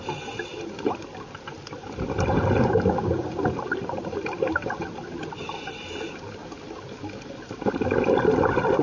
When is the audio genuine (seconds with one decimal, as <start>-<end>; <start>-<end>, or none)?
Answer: 0.0-8.8